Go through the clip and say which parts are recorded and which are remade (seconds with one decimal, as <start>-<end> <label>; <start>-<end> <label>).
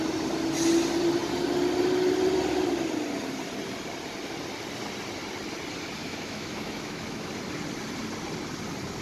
0.0-6.0 recorded; 6.0-7.3 remade; 7.3-9.0 recorded